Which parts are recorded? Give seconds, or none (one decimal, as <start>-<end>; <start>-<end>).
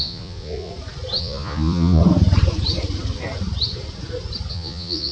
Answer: 0.7-1.2; 2.0-4.5